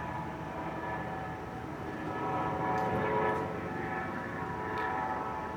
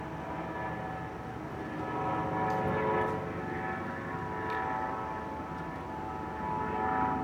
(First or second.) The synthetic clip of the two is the first